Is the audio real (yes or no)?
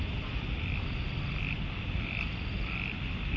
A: yes